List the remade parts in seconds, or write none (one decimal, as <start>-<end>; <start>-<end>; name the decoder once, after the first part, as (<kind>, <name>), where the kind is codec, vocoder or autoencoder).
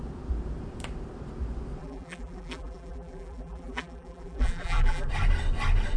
1.8-5.1 (vocoder, BigVGAN v2)